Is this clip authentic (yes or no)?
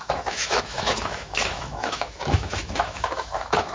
no